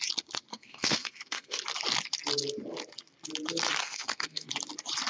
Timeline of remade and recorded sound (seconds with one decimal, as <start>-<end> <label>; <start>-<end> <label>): 0.0-0.5 recorded; 0.5-1.6 remade; 1.6-3.8 recorded; 3.8-4.5 remade; 4.5-5.1 recorded